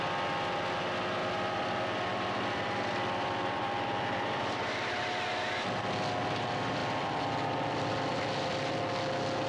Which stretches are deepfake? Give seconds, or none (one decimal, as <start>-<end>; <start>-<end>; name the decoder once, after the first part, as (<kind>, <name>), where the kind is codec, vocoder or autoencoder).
1.2-5.0 (vocoder, BigVGAN v2); 6.8-8.8